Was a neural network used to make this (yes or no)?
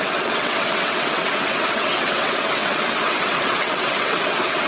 yes